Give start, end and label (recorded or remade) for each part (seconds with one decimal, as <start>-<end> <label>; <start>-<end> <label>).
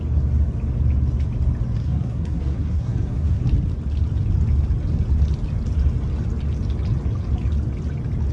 0.0-1.8 recorded; 1.8-3.4 remade; 3.4-8.3 recorded